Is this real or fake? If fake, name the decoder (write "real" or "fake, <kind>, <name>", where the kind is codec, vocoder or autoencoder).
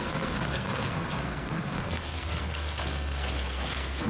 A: fake, codec, SNAC